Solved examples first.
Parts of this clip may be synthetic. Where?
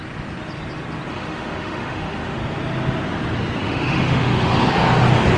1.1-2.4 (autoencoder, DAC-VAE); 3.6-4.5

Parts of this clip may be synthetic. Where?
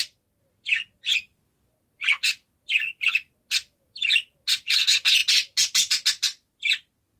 none